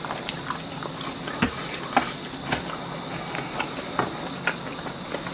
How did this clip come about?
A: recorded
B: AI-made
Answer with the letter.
A